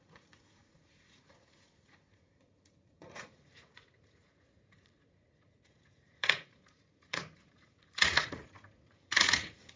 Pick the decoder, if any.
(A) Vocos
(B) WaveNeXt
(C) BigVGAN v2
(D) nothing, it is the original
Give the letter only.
A